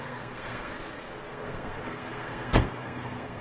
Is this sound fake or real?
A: fake